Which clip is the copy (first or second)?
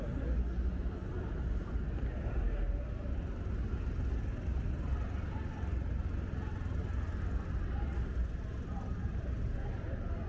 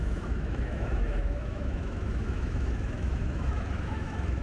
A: second